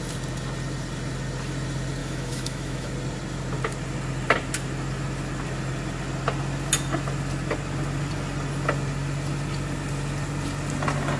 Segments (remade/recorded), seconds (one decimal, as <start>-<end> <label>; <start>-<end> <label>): 0.0-2.0 recorded; 2.0-2.9 remade; 2.9-11.2 recorded